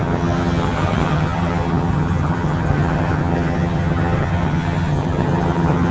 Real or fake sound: fake